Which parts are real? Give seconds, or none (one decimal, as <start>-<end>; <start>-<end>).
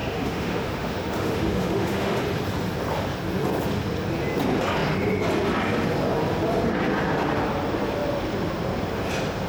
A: 2.2-9.5